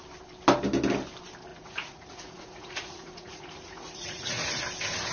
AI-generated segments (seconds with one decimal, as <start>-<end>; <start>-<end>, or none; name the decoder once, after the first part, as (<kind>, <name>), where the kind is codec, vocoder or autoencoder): 1.5-4.6 (vocoder, Vocos)